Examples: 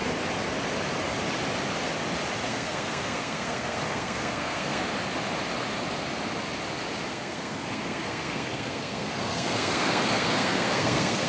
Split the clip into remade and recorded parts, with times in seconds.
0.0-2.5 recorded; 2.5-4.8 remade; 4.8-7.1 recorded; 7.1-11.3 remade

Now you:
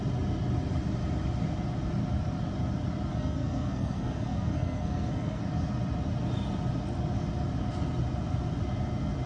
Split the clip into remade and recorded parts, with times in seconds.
0.0-3.1 recorded; 3.1-5.4 remade; 5.4-9.3 recorded

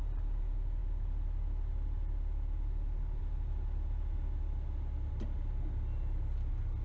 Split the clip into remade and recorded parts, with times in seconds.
0.0-6.8 recorded

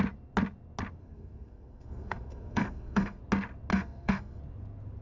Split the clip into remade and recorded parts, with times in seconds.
0.0-1.0 recorded; 1.0-3.2 remade; 3.2-3.7 recorded; 3.7-4.4 remade; 4.4-5.0 recorded